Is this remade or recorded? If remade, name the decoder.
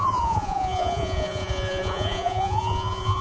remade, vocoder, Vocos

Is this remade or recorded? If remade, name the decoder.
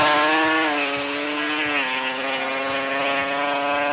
recorded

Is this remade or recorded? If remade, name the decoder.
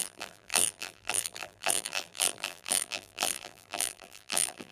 remade, vocoder, BigVGAN v2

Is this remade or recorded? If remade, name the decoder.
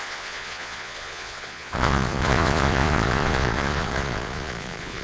remade, vocoder, Vocos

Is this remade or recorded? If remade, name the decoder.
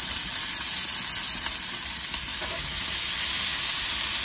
recorded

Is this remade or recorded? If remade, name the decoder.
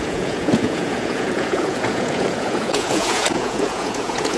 remade, vocoder, Vocos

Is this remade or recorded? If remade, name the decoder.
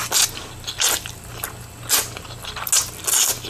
recorded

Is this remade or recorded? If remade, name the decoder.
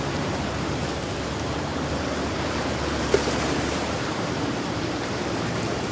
remade, vocoder, BigVGAN v2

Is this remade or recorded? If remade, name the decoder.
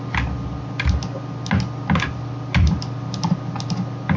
recorded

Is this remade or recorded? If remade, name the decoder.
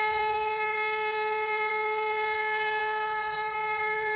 remade, vocoder, Vocos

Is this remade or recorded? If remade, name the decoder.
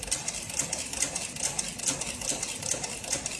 recorded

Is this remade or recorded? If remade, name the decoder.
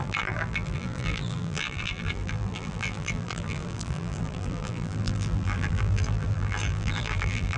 remade, vocoder, BigVGAN v2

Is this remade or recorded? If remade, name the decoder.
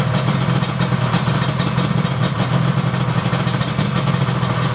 recorded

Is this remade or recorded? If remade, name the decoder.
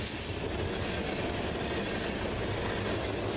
recorded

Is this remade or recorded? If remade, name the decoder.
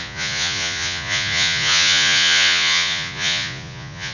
remade, vocoder, Vocos